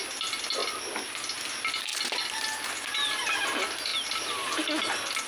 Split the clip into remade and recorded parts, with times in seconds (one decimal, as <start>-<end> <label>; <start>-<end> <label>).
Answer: 0.0-5.3 recorded